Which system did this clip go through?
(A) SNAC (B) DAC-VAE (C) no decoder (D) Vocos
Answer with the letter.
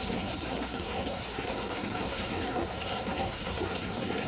A